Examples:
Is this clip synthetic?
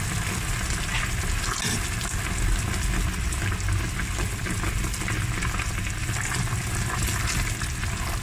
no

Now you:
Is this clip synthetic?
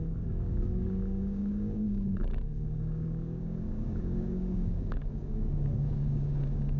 yes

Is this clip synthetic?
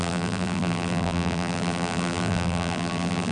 yes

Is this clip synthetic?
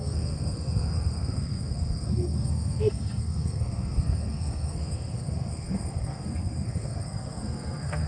yes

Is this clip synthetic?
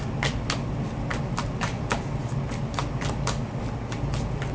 no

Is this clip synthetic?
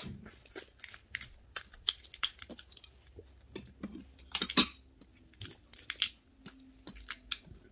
no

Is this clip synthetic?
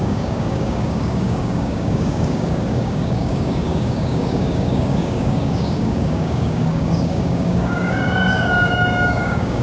yes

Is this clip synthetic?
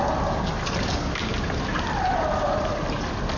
no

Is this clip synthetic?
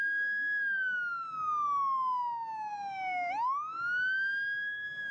no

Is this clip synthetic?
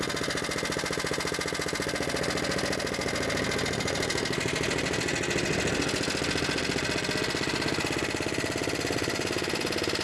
no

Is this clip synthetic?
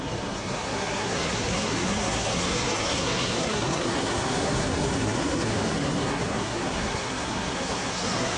yes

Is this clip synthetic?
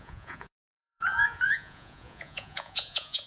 yes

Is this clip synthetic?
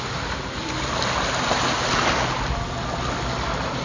no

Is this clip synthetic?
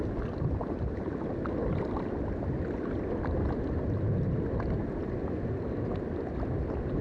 no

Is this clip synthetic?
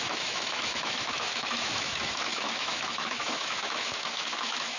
yes